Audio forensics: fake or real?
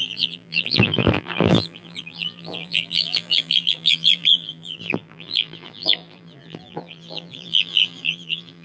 fake